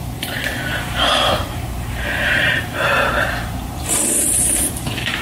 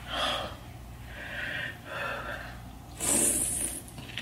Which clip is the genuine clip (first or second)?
second